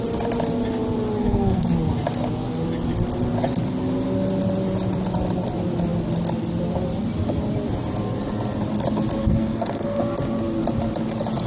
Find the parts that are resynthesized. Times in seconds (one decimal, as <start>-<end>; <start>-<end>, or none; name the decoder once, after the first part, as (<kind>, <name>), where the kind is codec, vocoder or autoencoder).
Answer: 1.2-1.7 (codec, SNAC); 9.2-10.0